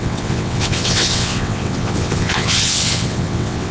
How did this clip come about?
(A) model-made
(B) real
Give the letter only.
A